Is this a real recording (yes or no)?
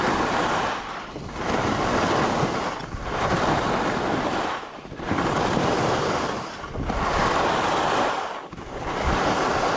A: yes